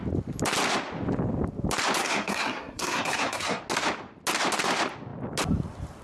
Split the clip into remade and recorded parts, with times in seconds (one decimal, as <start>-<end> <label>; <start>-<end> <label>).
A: 0.0-2.0 recorded; 2.0-3.6 remade; 3.6-6.0 recorded